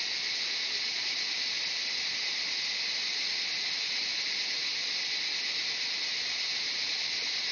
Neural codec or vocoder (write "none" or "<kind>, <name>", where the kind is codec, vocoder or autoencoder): none